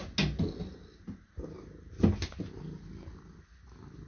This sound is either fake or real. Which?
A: real